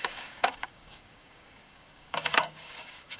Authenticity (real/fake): fake